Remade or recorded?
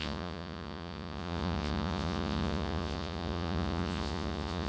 remade